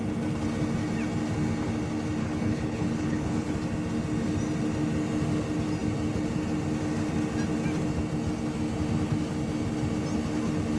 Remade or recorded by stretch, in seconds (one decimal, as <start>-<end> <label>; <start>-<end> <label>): 0.0-2.2 recorded; 2.2-3.5 remade; 3.5-10.8 recorded